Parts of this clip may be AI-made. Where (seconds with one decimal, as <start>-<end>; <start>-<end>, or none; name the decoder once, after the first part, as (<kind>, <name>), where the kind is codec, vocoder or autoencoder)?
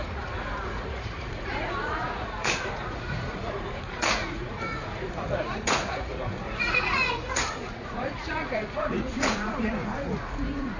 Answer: 0.0-10.8 (vocoder, Vocos)